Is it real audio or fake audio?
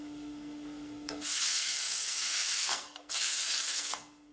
fake